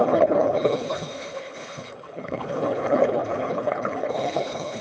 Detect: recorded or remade remade